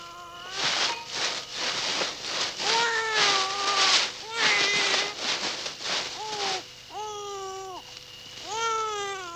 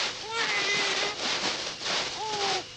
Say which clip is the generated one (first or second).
second